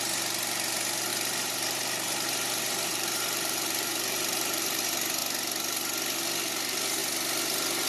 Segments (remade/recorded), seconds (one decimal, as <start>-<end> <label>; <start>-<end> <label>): 0.0-1.1 recorded; 1.1-4.8 remade; 4.8-7.9 recorded